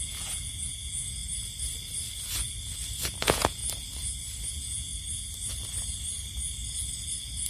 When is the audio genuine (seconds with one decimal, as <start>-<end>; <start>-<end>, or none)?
1.2-3.2; 3.6-4.5; 4.9-7.5